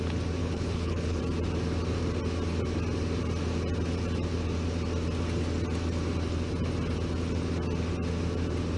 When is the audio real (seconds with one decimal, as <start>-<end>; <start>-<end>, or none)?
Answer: 0.0-0.4; 1.2-8.8